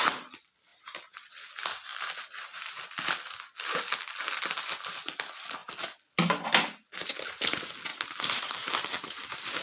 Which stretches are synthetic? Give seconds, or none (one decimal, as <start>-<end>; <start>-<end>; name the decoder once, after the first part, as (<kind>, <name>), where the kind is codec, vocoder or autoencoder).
0.7-1.3 (vocoder, BigVGAN v2); 1.9-2.6; 7.9-9.2